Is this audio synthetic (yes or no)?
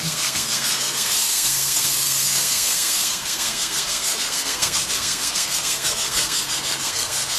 yes